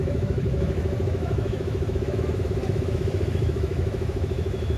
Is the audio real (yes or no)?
no